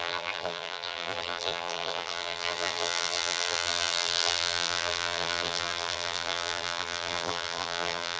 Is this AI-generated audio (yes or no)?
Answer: yes